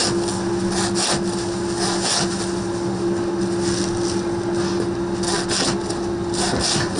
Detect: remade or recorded recorded